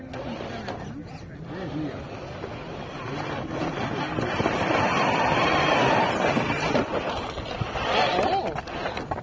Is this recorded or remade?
recorded